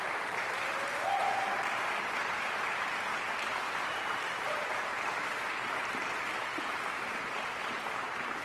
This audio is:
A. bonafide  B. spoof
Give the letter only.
B